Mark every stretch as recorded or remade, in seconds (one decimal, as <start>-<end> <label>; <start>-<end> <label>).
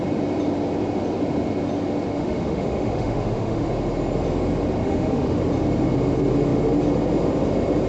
0.0-2.1 recorded; 2.1-3.7 remade; 3.7-4.8 recorded; 4.8-5.4 remade; 5.4-7.9 recorded